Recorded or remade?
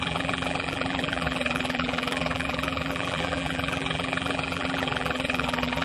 remade